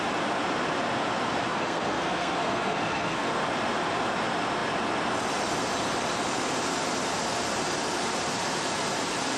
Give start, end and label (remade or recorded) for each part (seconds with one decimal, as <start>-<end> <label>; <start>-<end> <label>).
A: 0.0-1.5 recorded; 1.5-3.3 remade; 3.3-9.4 recorded

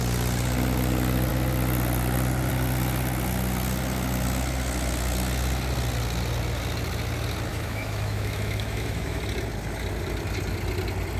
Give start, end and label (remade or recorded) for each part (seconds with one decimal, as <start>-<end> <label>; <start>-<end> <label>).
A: 0.0-7.5 recorded; 7.5-9.2 remade; 9.2-11.2 recorded

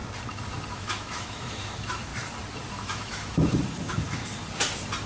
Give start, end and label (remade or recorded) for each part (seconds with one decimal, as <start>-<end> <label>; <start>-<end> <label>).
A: 0.0-0.7 recorded; 0.7-2.1 remade; 2.1-2.7 recorded; 2.7-4.2 remade; 4.2-5.1 recorded

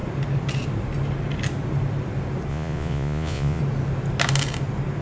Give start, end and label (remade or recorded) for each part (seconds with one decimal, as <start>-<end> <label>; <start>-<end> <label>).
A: 0.0-2.5 recorded; 2.5-3.6 remade; 3.6-5.0 recorded

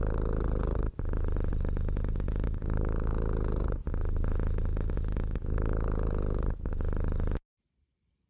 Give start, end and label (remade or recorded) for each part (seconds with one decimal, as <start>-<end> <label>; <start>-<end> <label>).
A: 0.0-8.3 recorded

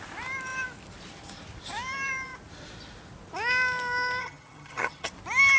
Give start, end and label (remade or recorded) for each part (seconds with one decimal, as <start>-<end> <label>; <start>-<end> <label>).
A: 0.0-4.2 recorded; 4.2-5.1 remade; 5.1-5.6 recorded

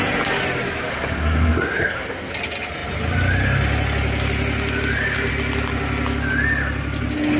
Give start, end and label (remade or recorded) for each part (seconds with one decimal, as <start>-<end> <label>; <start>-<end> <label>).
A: 0.0-0.9 recorded; 0.9-2.3 remade; 2.3-7.4 recorded